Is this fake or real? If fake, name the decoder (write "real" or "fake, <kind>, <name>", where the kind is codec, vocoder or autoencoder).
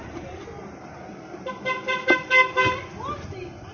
real